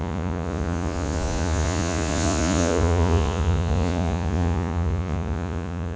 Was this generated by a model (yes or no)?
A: yes